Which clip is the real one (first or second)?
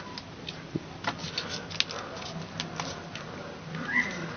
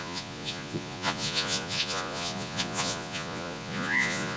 first